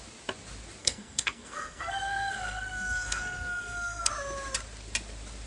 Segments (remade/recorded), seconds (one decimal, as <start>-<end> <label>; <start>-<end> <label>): 0.0-0.8 recorded; 0.8-4.1 remade; 4.1-5.5 recorded